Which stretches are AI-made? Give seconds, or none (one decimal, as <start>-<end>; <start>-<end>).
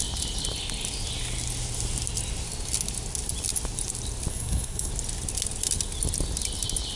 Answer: 4.3-4.9